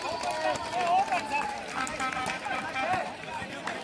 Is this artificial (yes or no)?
no